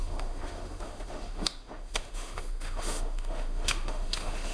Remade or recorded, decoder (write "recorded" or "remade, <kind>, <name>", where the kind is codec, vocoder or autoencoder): remade, autoencoder, DAC-VAE